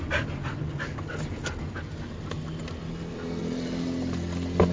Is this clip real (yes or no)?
yes